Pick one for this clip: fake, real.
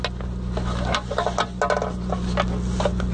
real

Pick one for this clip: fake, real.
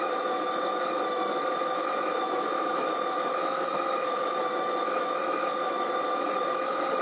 fake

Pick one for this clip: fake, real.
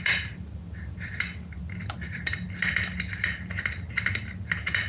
real